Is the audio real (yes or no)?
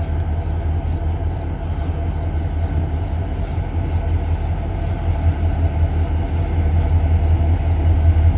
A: yes